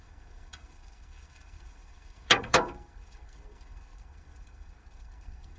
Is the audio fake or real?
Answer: fake